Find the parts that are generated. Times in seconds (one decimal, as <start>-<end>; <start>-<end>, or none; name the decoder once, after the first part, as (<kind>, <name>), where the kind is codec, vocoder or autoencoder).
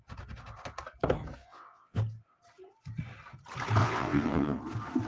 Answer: 1.4-2.0 (vocoder, WaveNeXt); 3.8-4.6